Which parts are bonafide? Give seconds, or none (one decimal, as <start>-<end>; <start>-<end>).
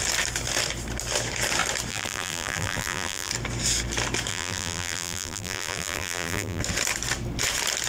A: 0.0-1.9; 3.3-4.3; 6.6-7.9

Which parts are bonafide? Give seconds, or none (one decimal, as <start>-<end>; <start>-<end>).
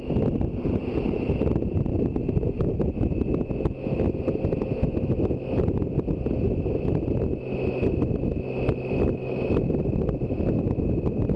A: 0.0-1.9; 2.6-11.4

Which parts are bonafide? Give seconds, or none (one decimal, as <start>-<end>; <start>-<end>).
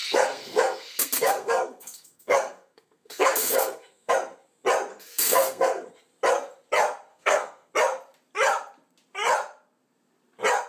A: 4.1-4.9; 5.9-7.1; 7.7-10.7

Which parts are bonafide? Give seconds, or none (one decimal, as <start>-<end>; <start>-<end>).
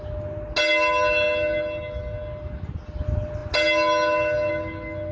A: 0.0-5.1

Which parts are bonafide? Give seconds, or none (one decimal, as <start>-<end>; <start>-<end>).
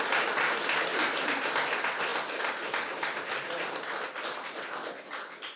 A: 0.0-5.6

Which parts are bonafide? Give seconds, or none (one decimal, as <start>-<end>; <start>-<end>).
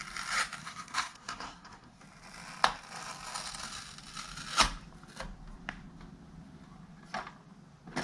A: 0.0-0.6; 2.0-8.0